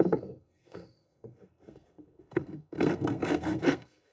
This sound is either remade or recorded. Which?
remade